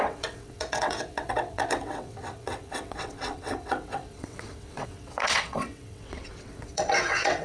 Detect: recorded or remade remade